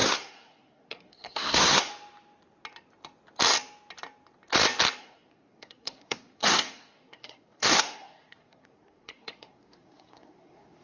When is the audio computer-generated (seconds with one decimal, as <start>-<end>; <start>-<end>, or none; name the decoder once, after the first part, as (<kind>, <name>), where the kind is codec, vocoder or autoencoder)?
0.0-1.9 (codec, SNAC); 5.0-10.8